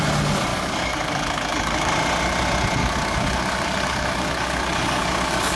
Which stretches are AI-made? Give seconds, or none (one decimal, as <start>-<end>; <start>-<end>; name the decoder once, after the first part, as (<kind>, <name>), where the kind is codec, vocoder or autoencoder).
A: 0.5-1.9 (codec, DAC); 2.8-5.6